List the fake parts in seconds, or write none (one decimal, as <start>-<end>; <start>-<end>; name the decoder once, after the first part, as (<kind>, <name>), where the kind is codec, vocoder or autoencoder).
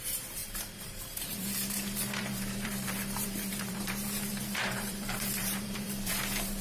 0.0-6.6 (vocoder, BigVGAN v2)